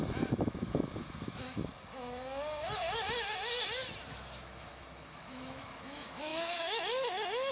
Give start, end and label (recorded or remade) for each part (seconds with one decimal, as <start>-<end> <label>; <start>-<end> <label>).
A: 0.0-1.7 remade; 1.7-4.1 recorded; 4.1-7.5 remade